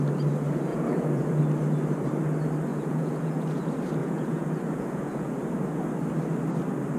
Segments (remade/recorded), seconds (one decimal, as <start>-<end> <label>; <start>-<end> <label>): 0.0-0.7 recorded; 0.7-1.4 remade; 1.4-2.7 recorded; 2.7-3.6 remade; 3.6-4.0 recorded; 4.0-5.4 remade; 5.4-7.0 recorded